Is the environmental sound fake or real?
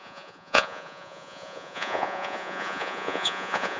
fake